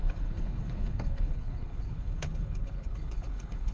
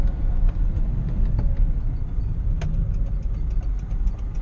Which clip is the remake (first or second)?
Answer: first